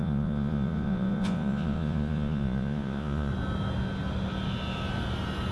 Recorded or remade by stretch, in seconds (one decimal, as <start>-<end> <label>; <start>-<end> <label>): 0.0-3.3 remade; 3.3-5.5 recorded